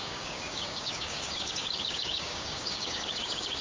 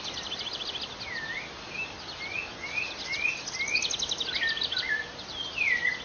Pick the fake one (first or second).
first